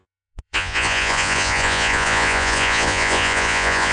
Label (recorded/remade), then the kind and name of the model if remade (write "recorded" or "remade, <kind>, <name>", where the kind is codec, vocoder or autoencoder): remade, vocoder, Vocos